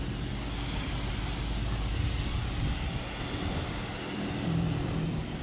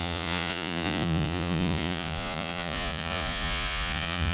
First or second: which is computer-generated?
second